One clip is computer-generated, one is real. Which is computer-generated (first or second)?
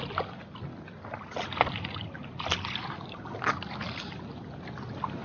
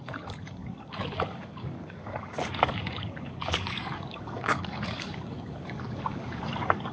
second